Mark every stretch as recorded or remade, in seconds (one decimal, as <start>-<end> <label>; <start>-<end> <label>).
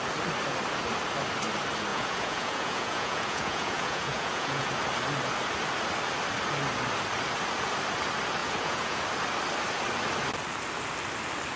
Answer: 0.0-1.9 recorded; 1.9-4.7 remade; 4.7-8.4 recorded; 8.4-9.0 remade; 9.0-11.6 recorded